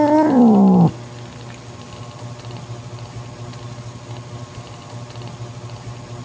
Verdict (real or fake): real